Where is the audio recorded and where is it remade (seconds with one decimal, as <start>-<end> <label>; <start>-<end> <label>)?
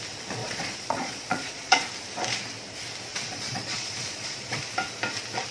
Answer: 0.0-0.4 recorded; 0.4-1.9 remade; 1.9-3.1 recorded; 3.1-4.6 remade; 4.6-5.5 recorded